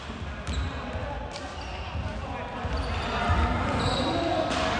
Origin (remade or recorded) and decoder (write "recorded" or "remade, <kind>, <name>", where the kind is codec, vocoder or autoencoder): recorded